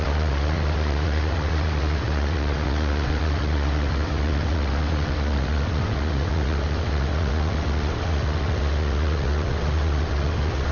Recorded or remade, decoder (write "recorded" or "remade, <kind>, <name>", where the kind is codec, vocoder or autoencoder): remade, vocoder, WaveNeXt